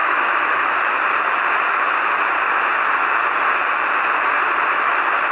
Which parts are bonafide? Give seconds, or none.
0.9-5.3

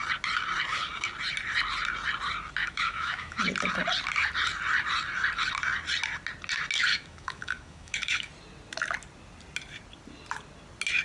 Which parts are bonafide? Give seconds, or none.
0.0-2.6; 3.4-6.9; 8.3-11.0

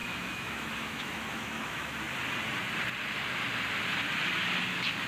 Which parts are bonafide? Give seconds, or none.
2.0-5.1

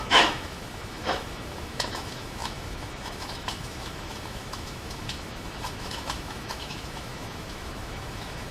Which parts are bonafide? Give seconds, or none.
none